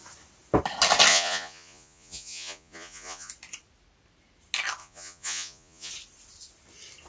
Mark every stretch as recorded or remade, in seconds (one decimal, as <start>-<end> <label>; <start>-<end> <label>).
0.0-1.1 recorded; 1.1-3.3 remade; 3.3-4.8 recorded; 4.8-5.9 remade; 5.9-7.1 recorded